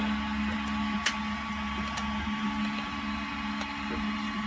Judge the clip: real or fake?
real